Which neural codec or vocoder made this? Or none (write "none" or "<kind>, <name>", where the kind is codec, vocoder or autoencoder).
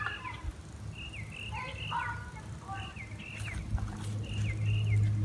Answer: none